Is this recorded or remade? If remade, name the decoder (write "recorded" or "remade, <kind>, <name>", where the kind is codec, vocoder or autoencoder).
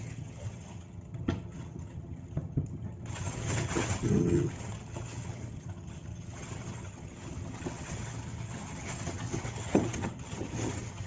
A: remade, vocoder, HiFi-GAN